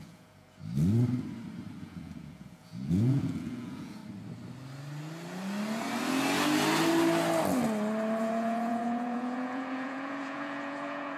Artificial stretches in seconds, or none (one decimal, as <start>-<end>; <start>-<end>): 0.0-0.6; 1.8-4.0; 8.2-11.2